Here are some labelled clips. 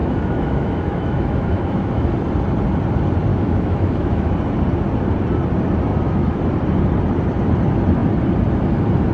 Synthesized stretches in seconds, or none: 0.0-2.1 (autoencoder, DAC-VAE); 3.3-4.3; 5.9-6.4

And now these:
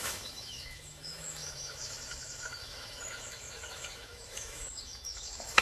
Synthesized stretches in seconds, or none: 0.0-5.6 (autoencoder, DAC-VAE)

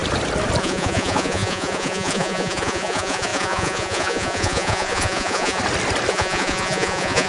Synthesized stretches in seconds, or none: 0.6-5.6 (vocoder, Vocos); 6.1-7.3

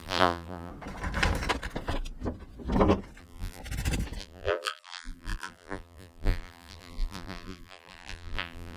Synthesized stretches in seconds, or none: 0.0-0.7 (vocoder, BigVGAN v2); 3.2-3.6; 4.2-8.8

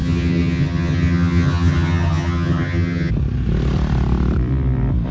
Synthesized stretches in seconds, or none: 0.0-3.1 (vocoder, HiFi-GAN)

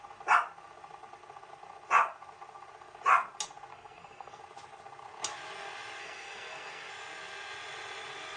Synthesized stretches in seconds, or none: 3.7-4.4 (codec, SNAC); 6.0-6.9

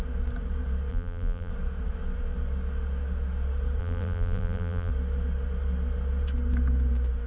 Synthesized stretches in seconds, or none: 0.9-1.5 (vocoder, BigVGAN v2); 3.8-4.9